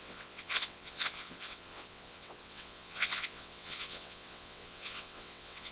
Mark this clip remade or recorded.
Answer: remade